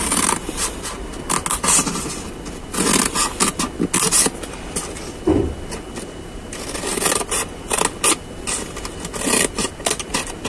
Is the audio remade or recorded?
recorded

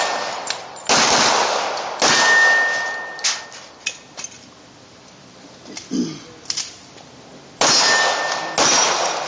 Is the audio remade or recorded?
recorded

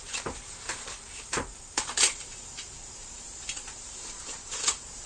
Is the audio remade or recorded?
remade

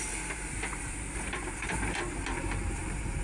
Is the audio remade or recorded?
remade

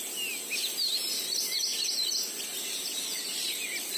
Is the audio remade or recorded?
recorded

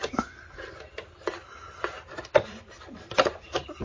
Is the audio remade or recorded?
recorded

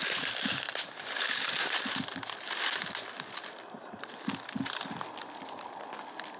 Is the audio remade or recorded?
remade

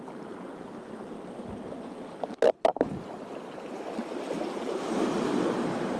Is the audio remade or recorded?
remade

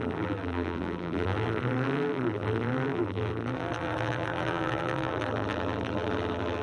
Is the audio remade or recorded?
remade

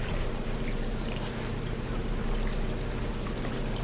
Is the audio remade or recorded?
remade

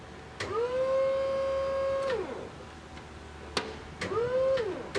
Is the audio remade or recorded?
recorded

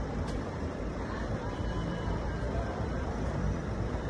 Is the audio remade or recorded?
remade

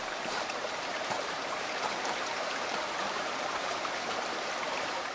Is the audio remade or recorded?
remade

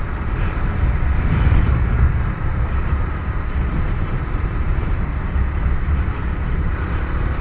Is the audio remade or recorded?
remade